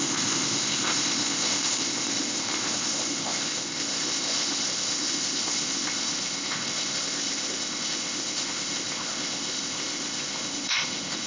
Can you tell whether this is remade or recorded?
remade